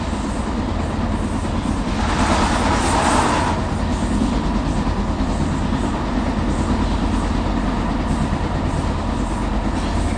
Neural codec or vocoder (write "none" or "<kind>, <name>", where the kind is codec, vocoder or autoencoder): none